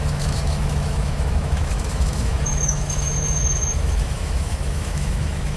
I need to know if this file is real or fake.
fake